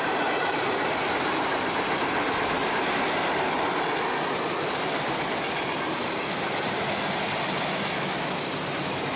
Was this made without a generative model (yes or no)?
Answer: yes